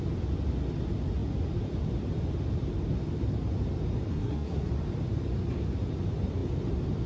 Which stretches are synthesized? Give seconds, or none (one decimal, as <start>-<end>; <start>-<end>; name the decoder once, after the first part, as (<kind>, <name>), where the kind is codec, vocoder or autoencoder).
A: 4.1-4.7 (codec, SNAC)